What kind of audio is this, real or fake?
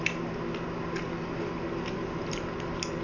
real